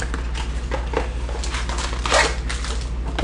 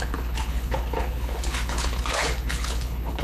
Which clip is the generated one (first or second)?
second